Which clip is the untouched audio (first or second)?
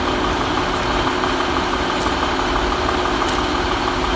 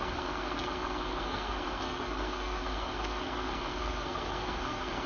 first